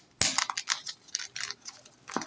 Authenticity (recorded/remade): recorded